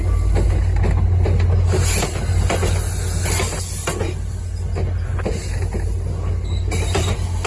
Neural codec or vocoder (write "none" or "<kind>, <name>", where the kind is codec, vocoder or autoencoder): none